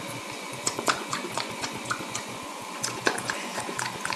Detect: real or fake fake